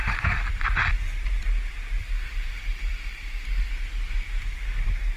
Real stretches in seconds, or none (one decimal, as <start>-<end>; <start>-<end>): 0.0-2.0; 3.7-5.2